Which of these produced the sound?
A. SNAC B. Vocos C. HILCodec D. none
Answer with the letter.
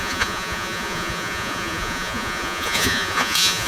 B